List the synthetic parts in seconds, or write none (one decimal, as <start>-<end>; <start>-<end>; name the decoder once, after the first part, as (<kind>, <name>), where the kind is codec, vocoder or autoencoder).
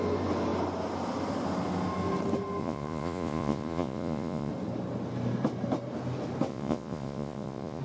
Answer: 2.6-4.5 (vocoder, Vocos); 6.5-7.8